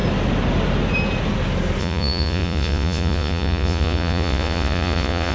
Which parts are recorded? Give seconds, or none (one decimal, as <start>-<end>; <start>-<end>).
0.0-1.8